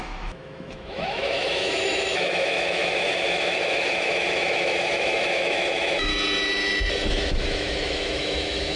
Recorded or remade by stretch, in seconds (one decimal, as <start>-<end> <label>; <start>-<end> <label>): 0.0-6.1 remade; 6.1-7.1 recorded; 7.1-8.8 remade